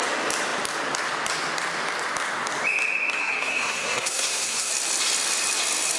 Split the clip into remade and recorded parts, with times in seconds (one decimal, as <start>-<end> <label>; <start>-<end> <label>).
0.0-3.2 recorded; 3.2-4.7 remade; 4.7-6.0 recorded